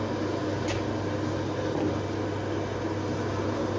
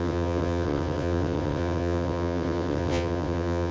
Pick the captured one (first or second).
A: first